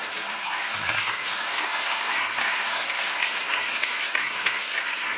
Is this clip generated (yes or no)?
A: yes